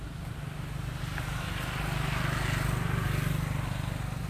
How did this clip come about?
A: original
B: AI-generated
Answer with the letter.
A